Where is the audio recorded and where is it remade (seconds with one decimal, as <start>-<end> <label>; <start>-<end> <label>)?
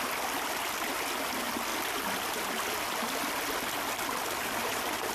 0.0-5.1 recorded